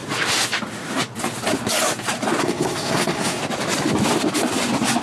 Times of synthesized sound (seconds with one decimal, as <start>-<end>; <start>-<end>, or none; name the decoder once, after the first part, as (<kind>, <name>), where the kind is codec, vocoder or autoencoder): 2.4-3.4 (codec, SNAC)